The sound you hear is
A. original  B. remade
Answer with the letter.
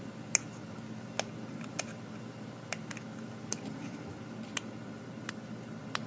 A